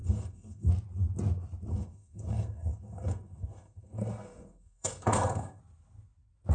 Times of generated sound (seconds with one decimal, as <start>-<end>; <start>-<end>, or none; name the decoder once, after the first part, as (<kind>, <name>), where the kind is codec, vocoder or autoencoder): 0.0-0.7 (codec, SNAC); 1.7-5.6